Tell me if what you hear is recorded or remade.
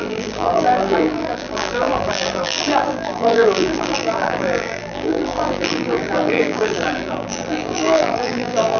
remade